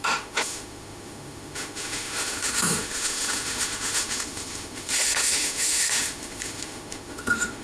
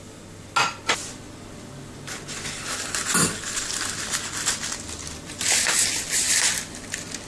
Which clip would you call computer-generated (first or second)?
first